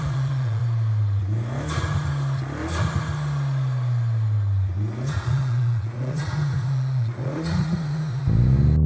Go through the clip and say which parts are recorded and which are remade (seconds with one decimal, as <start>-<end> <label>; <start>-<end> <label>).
0.0-0.6 remade; 0.6-5.1 recorded; 5.1-8.2 remade; 8.2-8.9 recorded